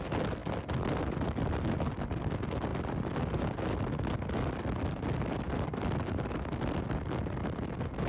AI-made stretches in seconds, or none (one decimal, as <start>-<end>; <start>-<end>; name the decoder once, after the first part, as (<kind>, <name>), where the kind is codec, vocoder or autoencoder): 0.4-2.2 (vocoder, BigVGAN v2); 2.7-3.4